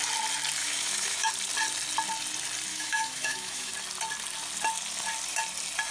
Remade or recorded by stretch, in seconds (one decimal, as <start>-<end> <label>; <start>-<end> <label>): 0.0-0.6 recorded; 0.6-1.3 remade; 1.3-2.7 recorded; 2.7-3.7 remade; 3.7-5.9 recorded